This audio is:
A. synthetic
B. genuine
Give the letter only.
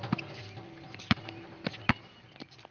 B